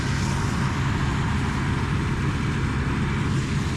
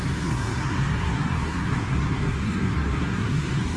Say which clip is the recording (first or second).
first